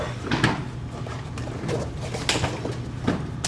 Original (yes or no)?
yes